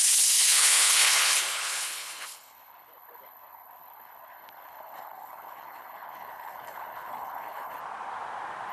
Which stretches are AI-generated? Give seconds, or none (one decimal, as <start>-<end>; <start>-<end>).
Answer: 0.0-7.8